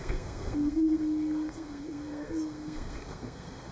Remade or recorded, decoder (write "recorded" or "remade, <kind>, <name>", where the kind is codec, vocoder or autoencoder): remade, codec, SNAC